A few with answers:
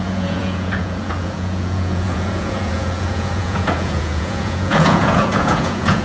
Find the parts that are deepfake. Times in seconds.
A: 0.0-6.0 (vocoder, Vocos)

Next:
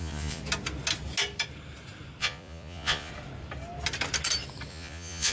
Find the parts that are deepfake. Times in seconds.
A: 0.0-0.4 (vocoder, Vocos); 2.2-3.1; 4.7-5.3

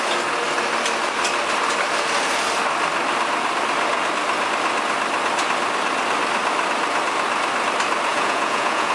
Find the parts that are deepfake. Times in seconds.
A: 8.1-8.9 (vocoder, Vocos)